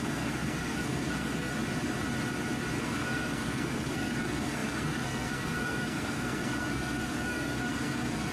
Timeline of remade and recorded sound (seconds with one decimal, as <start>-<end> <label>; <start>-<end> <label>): 0.0-1.5 remade; 1.5-2.8 recorded; 2.8-8.3 remade